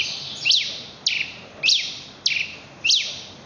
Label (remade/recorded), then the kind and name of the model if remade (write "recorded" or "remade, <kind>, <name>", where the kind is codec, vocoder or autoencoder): recorded